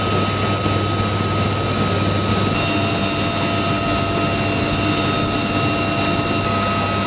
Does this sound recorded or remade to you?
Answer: recorded